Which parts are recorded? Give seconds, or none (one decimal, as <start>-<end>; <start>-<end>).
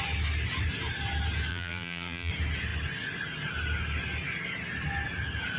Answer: 0.0-1.5; 2.3-5.6